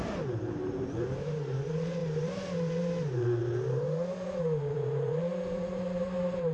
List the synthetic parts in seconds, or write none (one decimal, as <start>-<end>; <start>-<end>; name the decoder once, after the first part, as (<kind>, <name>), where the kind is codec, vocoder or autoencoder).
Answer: 0.0-6.5 (vocoder, BigVGAN v2)